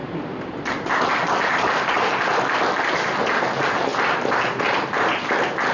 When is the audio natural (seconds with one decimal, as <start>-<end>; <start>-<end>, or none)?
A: 0.0-5.7